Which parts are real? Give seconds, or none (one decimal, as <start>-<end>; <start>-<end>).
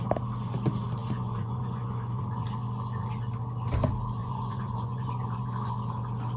0.0-1.0; 2.2-4.2; 5.7-6.4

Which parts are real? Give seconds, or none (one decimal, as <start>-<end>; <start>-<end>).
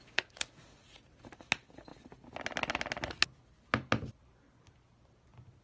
0.0-5.6